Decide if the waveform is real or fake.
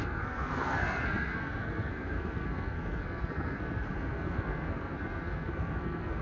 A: fake